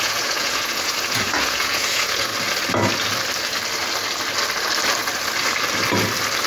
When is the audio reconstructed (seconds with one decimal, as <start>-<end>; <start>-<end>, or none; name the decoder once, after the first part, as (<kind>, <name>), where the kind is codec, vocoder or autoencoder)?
0.0-2.3 (vocoder, Vocos)